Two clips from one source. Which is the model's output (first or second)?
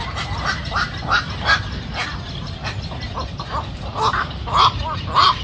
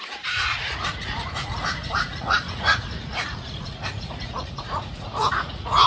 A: second